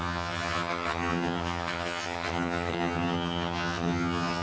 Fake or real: fake